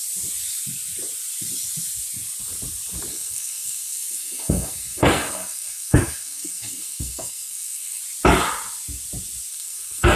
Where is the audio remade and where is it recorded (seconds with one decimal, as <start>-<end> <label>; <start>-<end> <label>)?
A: 0.0-3.1 recorded; 3.1-8.0 remade; 8.0-9.5 recorded; 9.5-10.2 remade